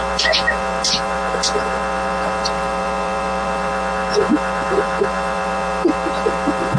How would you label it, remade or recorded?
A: remade